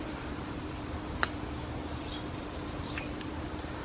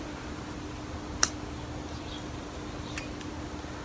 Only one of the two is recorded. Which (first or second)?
second